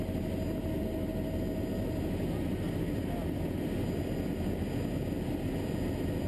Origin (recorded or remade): recorded